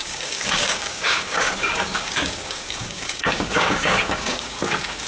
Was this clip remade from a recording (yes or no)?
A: yes